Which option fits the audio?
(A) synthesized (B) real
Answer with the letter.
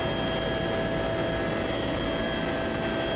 B